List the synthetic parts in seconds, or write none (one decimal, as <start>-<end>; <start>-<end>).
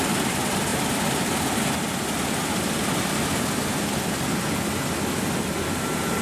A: none